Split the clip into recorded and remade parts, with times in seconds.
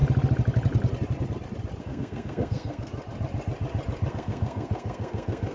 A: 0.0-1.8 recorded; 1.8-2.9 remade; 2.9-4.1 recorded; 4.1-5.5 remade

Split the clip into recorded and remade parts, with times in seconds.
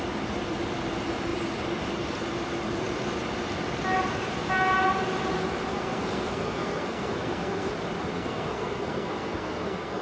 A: 0.0-5.7 recorded; 5.7-7.7 remade; 7.7-8.1 recorded; 8.1-10.0 remade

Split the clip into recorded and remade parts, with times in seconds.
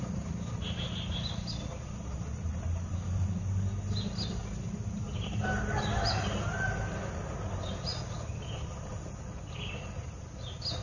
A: 0.0-10.8 recorded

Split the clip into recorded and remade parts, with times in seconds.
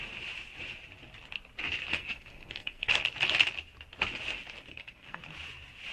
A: 0.0-1.9 recorded; 1.9-2.9 remade; 2.9-4.7 recorded; 4.7-5.2 remade; 5.2-5.9 recorded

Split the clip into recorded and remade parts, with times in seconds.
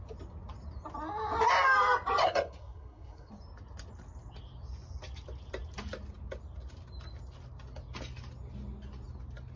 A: 0.0-2.2 recorded; 2.2-3.3 remade; 3.3-9.6 recorded